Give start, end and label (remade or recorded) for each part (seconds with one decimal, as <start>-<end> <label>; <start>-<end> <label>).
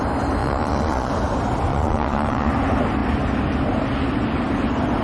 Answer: 0.0-0.4 recorded; 0.4-1.1 remade; 1.1-1.7 recorded; 1.7-2.5 remade; 2.5-5.0 recorded